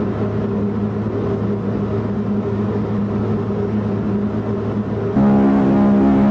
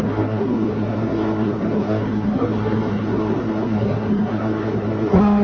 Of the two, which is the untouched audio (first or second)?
first